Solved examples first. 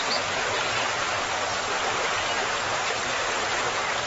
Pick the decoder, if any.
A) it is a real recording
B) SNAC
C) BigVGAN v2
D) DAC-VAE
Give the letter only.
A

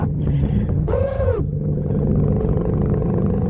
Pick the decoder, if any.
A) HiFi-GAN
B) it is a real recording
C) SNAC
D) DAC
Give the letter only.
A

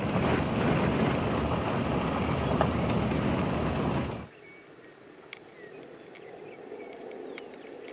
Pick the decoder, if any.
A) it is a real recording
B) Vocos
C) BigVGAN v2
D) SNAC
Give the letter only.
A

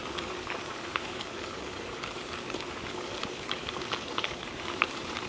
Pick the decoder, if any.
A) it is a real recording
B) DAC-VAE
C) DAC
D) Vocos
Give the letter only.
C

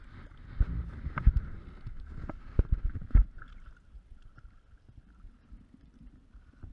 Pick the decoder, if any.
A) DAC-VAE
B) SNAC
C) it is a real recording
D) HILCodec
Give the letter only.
C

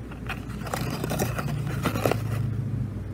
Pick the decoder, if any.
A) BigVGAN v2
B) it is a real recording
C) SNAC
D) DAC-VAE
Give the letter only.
B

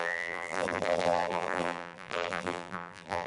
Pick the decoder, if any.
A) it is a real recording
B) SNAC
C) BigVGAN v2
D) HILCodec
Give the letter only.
C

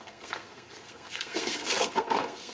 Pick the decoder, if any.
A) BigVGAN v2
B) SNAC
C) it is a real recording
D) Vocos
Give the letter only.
B